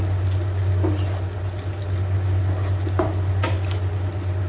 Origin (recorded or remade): recorded